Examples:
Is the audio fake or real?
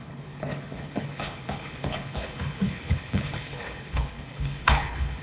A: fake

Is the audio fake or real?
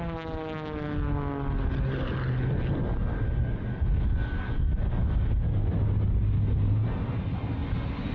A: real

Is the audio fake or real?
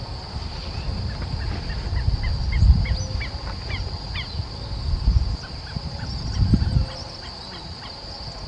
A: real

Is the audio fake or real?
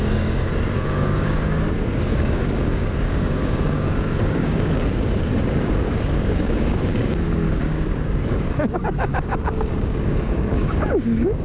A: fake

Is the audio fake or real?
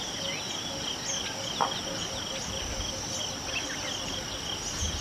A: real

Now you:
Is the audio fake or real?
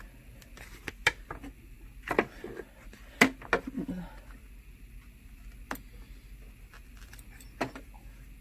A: real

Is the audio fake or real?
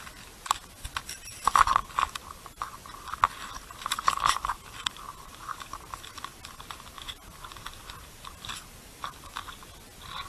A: real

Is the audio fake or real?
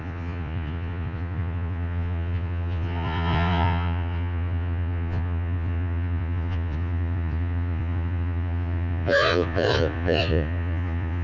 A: fake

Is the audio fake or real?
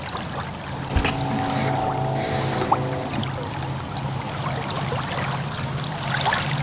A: real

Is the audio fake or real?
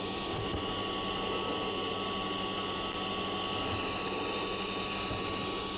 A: real